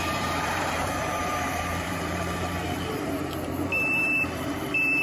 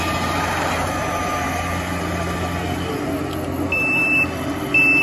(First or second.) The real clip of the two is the second